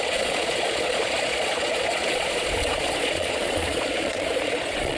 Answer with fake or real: fake